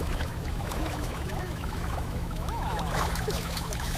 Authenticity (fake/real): fake